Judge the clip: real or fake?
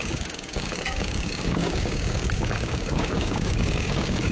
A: fake